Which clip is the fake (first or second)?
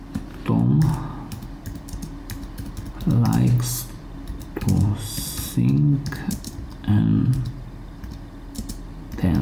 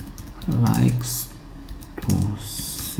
second